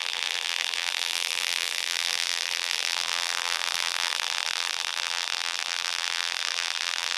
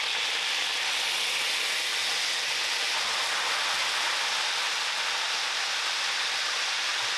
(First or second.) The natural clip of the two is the second